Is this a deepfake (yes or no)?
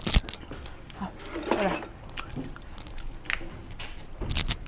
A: no